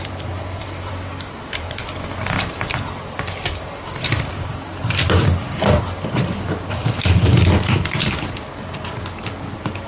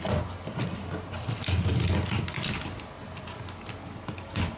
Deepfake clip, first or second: first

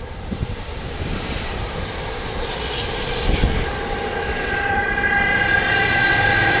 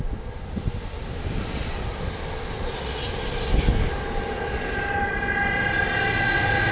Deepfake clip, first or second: first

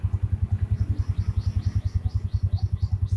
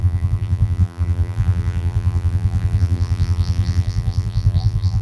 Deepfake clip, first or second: second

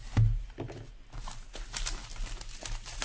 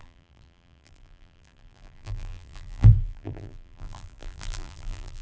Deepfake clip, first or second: second